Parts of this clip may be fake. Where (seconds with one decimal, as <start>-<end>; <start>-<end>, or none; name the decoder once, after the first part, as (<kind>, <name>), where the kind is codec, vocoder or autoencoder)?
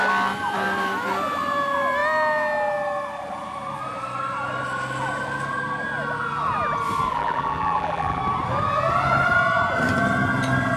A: 7.1-8.2 (vocoder, BigVGAN v2)